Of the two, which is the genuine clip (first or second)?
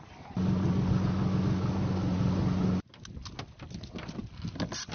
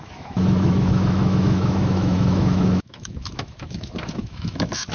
first